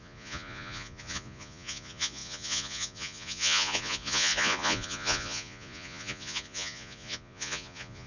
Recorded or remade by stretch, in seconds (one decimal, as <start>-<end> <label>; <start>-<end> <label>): 0.0-8.1 remade